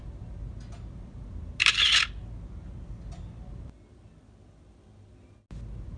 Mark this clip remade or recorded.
recorded